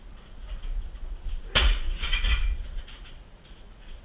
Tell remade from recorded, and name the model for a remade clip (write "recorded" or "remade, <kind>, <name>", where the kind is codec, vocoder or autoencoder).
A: remade, vocoder, Vocos